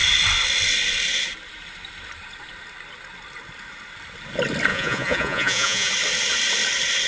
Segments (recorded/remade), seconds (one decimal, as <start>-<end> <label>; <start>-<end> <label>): 0.0-4.7 recorded; 4.7-5.9 remade; 5.9-7.1 recorded